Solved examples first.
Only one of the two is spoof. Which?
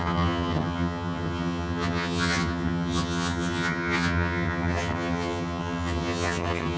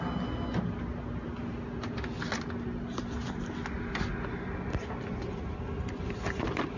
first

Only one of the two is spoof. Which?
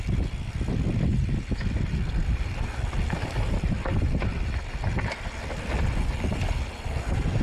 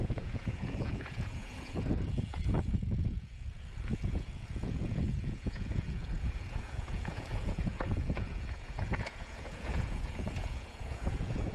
second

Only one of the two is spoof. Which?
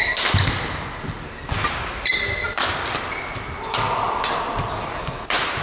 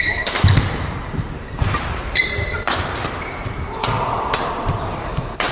second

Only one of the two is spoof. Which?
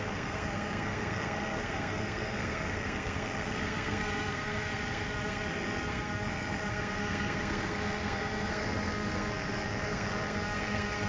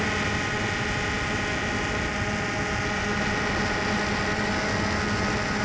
first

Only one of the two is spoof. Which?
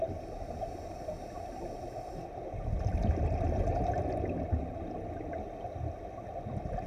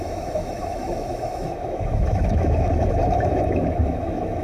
second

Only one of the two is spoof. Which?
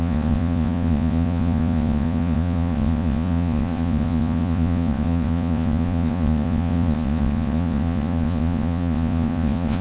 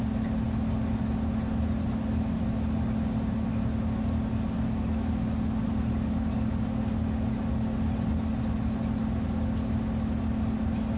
first